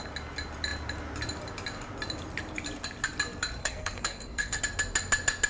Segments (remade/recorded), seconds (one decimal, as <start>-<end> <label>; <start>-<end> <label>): 0.0-3.6 recorded; 3.6-4.6 remade; 4.6-5.5 recorded

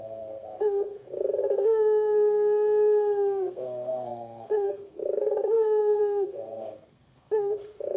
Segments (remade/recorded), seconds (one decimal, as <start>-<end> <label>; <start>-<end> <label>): 0.0-8.0 remade

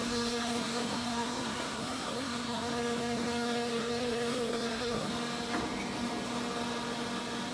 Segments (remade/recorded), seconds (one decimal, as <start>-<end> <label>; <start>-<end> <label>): 0.0-5.1 remade; 5.1-7.5 recorded

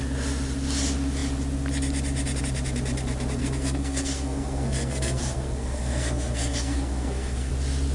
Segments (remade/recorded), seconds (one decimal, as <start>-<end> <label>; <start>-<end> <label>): 0.0-3.4 recorded; 3.4-7.5 remade; 7.5-7.9 recorded

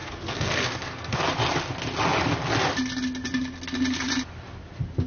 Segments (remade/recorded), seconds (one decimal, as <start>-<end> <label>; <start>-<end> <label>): 0.0-1.2 remade; 1.2-5.1 recorded